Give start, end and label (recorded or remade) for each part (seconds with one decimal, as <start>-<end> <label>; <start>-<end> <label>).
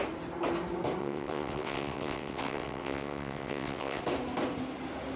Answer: 0.0-1.0 recorded; 1.0-4.0 remade; 4.0-5.2 recorded